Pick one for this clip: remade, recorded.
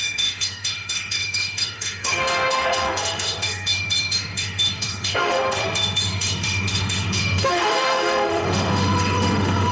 remade